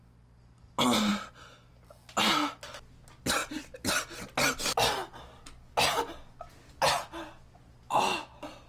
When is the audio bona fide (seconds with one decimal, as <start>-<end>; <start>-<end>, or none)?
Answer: 0.0-8.7